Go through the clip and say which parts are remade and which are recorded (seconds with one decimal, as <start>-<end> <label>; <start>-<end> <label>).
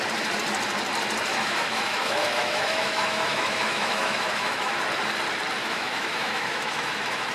0.0-1.3 recorded; 1.3-4.8 remade; 4.8-5.6 recorded; 5.6-7.3 remade